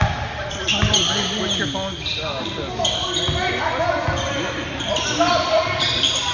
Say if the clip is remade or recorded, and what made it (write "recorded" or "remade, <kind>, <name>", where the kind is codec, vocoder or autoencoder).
recorded